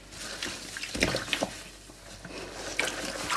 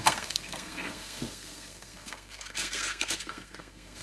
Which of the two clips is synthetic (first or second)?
second